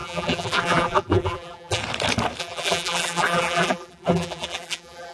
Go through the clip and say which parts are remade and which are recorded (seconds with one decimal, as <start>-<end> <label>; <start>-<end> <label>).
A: 0.0-1.8 remade; 1.8-2.4 recorded; 2.4-5.1 remade